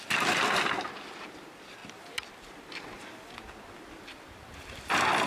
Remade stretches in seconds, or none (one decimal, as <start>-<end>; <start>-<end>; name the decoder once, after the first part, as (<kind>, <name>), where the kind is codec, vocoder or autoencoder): 0.0-1.8 (vocoder, BigVGAN v2); 4.4-5.3